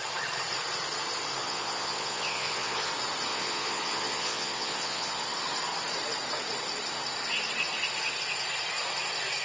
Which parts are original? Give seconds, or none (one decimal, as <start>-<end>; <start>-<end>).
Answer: 0.0-1.4; 2.9-3.3; 5.2-9.4